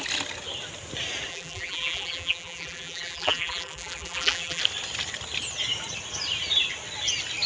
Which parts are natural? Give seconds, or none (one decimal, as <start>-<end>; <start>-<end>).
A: 0.0-1.3; 4.6-7.5